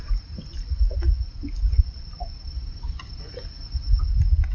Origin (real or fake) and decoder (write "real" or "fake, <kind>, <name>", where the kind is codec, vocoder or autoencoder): real